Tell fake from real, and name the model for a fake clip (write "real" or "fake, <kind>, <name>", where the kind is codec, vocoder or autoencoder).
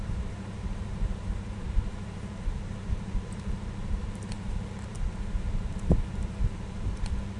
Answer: fake, vocoder, BigVGAN v2